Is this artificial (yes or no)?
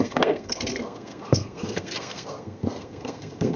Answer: yes